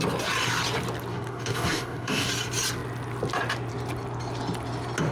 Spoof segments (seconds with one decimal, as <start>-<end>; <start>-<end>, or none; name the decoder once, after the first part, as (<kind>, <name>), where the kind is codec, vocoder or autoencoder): 1.1-2.3 (codec, DAC)